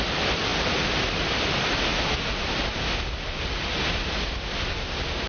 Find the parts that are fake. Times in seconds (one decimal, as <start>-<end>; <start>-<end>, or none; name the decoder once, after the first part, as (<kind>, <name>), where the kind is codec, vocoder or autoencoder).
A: 0.0-0.5 (vocoder, BigVGAN v2); 1.2-1.9